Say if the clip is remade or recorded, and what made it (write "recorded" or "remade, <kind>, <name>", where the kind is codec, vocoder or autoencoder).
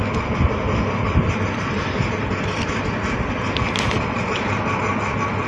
recorded